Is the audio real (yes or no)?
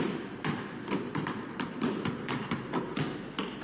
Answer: yes